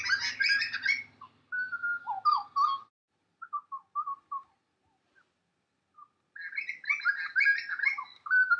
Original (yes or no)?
yes